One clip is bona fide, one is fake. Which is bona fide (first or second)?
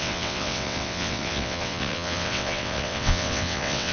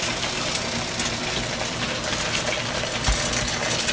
second